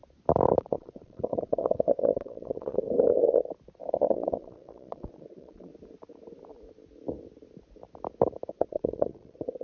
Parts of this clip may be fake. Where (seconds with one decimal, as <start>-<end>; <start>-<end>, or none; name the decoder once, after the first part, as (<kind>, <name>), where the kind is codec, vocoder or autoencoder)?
0.6-2.8 (vocoder, Vocos); 3.9-5.7; 8.5-9.6